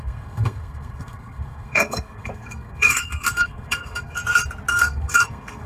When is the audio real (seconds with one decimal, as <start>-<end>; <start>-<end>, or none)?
4.2-4.7

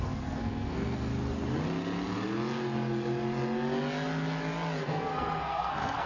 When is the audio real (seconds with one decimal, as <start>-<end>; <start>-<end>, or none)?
1.1-4.8

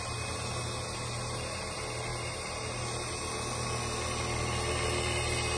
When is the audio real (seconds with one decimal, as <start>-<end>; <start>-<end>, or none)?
0.0-5.6